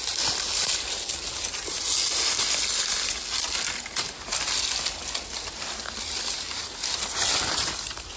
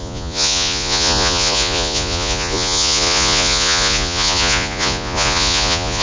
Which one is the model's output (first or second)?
second